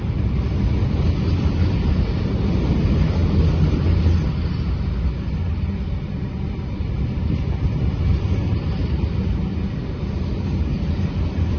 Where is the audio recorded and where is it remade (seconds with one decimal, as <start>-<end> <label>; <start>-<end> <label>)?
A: 0.0-11.6 recorded